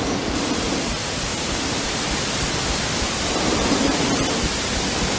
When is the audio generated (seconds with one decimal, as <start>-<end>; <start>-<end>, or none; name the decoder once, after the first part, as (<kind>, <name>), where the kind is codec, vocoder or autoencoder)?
1.3-4.4 (vocoder, BigVGAN v2)